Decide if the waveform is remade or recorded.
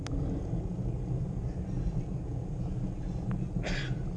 recorded